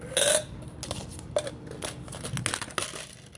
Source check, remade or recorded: recorded